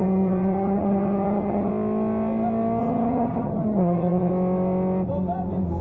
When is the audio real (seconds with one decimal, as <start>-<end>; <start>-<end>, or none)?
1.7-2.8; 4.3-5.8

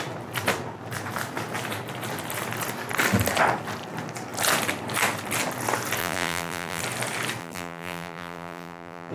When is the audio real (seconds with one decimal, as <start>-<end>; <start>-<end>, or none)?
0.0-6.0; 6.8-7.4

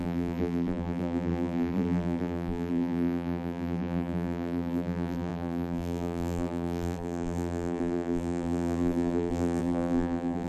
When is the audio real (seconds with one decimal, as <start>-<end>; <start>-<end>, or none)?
none

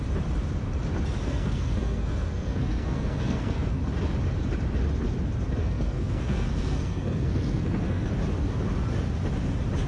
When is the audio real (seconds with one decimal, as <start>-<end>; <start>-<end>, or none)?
0.0-1.2; 3.8-5.6; 8.1-9.9

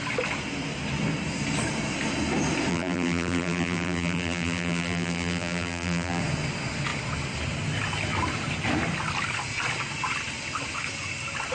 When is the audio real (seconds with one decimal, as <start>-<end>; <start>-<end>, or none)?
0.0-2.7; 6.2-11.5

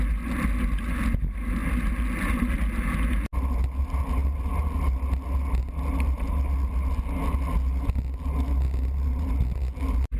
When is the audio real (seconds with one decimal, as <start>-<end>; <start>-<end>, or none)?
0.0-10.2